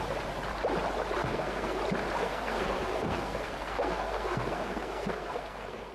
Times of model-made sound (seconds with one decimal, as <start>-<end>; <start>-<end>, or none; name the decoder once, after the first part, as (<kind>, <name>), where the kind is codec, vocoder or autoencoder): 1.2-1.8 (codec, SNAC); 2.2-5.9

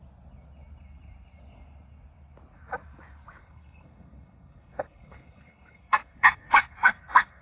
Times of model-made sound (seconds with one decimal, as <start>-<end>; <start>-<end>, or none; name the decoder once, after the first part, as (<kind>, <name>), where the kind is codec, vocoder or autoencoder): 3.4-7.4 (codec, SNAC)

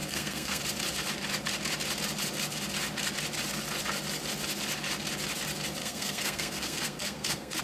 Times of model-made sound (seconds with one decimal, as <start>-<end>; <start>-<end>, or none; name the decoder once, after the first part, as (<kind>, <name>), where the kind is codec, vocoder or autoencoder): 0.0-0.6 (codec, SNAC); 5.8-7.6

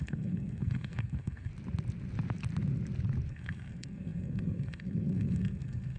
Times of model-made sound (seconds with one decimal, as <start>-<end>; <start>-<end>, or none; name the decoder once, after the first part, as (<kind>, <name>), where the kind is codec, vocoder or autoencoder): 0.0-1.5 (codec, SNAC); 3.3-6.0

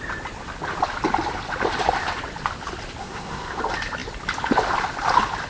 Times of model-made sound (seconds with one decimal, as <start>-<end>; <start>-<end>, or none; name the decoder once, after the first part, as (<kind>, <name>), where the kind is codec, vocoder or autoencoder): 3.0-3.6 (codec, SNAC)

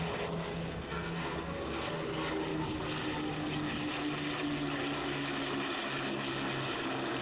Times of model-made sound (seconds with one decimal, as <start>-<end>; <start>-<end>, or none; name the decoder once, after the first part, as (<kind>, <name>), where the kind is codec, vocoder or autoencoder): 0.5-1.9 (codec, SNAC)

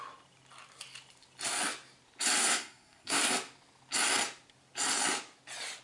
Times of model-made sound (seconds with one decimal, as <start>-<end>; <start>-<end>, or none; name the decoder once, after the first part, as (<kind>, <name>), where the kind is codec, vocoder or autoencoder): 2.4-3.2 (codec, SNAC)

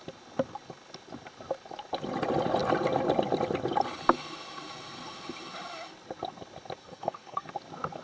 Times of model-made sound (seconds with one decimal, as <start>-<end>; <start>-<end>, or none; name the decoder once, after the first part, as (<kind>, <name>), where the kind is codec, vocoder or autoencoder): 6.8-7.5 (codec, SNAC)